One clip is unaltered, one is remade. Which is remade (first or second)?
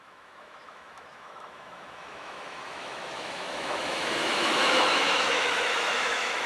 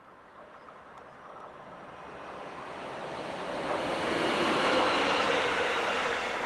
first